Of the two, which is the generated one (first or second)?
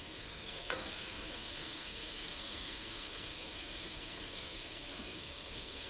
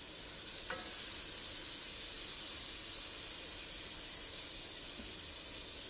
first